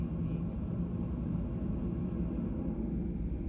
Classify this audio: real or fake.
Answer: real